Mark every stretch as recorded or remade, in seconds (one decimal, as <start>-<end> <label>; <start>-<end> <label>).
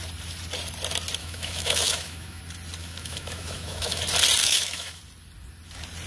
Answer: 0.0-1.2 recorded; 1.2-2.4 remade; 2.4-2.8 recorded; 2.8-4.0 remade; 4.0-4.4 recorded; 4.4-5.0 remade; 5.0-6.1 recorded